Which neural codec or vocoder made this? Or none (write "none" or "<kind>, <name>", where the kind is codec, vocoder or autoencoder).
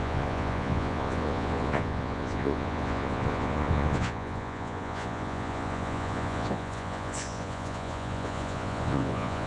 vocoder, Vocos